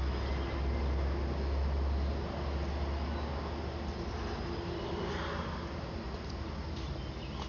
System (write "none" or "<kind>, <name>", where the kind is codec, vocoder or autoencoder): none